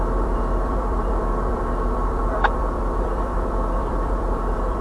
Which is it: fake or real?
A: fake